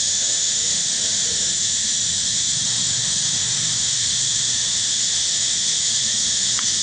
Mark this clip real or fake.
fake